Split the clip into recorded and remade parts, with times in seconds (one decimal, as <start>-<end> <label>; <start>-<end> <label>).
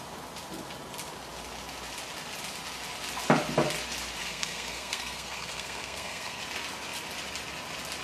0.0-4.2 recorded; 4.2-6.4 remade; 6.4-8.0 recorded